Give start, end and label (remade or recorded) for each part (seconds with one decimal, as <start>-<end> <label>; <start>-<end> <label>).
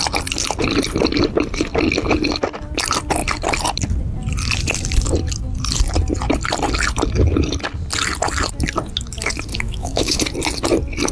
0.0-9.5 recorded; 9.5-10.2 remade; 10.2-11.1 recorded